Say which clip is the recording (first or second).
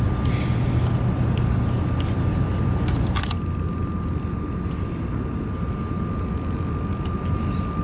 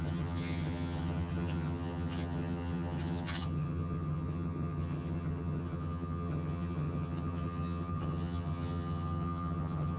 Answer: first